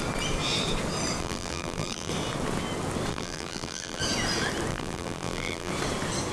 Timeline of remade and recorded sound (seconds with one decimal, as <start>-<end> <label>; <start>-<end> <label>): 0.0-1.2 recorded; 1.2-2.1 remade; 2.1-3.1 recorded; 3.1-4.0 remade; 4.0-4.7 recorded; 4.7-5.7 remade; 5.7-6.3 recorded